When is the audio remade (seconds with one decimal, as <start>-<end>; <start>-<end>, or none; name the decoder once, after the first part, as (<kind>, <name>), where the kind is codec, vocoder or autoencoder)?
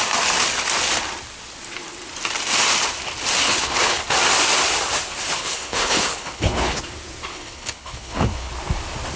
3.4-4.0 (codec, HILCodec); 5.4-6.8; 7.3-8.5